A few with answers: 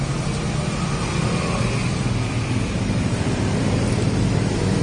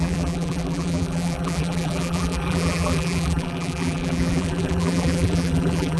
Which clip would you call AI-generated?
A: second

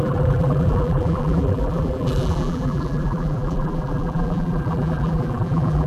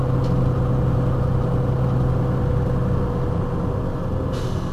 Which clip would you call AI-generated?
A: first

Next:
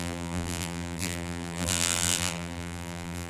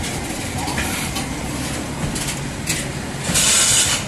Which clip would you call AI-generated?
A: first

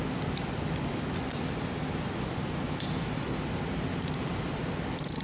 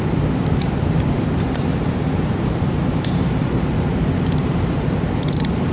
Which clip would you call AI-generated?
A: second